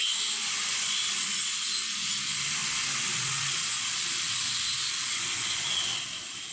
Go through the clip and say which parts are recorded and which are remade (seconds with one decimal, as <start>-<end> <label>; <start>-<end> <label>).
0.0-0.4 recorded; 0.4-1.0 remade; 1.0-5.1 recorded; 5.1-5.6 remade; 5.6-6.5 recorded

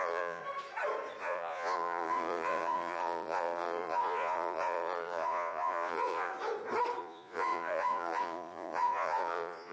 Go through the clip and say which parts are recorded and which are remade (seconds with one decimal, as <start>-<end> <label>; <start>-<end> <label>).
0.0-0.4 remade; 0.4-1.2 recorded; 1.2-6.3 remade; 6.3-7.0 recorded; 7.0-9.7 remade